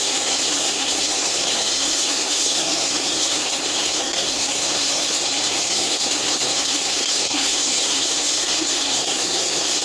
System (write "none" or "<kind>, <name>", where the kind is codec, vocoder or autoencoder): codec, SNAC